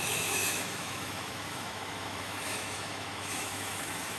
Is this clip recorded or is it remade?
remade